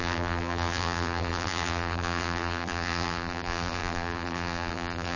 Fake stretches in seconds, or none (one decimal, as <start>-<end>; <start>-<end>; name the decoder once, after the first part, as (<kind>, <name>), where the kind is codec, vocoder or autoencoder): 0.0-5.2 (vocoder, BigVGAN v2)

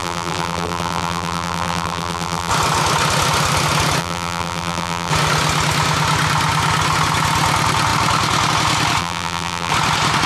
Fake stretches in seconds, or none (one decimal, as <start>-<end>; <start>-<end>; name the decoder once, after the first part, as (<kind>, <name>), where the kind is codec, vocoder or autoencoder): 0.0-2.5 (vocoder, BigVGAN v2); 4.0-5.1; 9.0-9.7

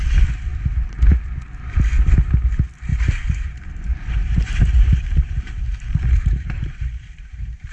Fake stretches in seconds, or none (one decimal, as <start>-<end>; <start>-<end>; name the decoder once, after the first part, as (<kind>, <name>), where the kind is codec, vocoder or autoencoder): 0.5-1.2 (vocoder, BigVGAN v2); 2.9-7.7

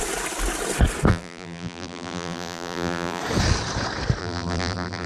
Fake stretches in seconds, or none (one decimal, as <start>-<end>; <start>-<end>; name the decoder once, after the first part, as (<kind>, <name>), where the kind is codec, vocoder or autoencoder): 1.1-3.2 (vocoder, BigVGAN v2); 4.2-5.1

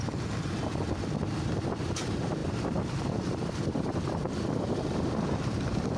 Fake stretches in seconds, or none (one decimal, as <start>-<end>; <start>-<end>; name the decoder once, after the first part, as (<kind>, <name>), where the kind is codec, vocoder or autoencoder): 2.4-6.0 (vocoder, BigVGAN v2)

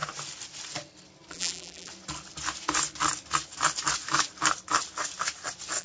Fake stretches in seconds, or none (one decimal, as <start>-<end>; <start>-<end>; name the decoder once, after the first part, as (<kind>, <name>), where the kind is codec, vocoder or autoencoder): 1.3-1.9 (vocoder, BigVGAN v2)

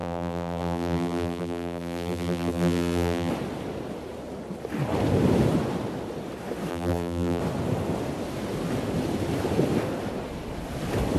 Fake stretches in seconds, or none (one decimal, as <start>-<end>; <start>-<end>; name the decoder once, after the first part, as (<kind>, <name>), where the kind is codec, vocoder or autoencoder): 0.0-3.3 (vocoder, BigVGAN v2); 6.7-7.4

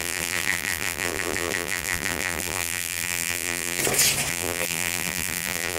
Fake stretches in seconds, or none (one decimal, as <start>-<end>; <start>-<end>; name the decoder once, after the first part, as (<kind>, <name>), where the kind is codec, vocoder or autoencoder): 0.0-3.8 (vocoder, BigVGAN v2); 4.3-5.8